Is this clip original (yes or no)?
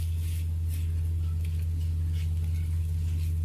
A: yes